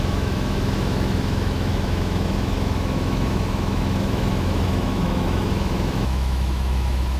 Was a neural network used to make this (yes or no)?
yes